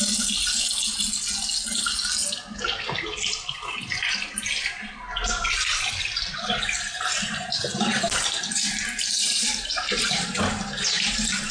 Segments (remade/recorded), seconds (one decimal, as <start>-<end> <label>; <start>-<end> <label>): 0.0-7.9 recorded; 7.9-11.5 remade